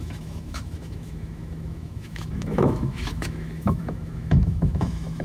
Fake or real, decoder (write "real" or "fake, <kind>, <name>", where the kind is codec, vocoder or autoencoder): fake, autoencoder, DAC-VAE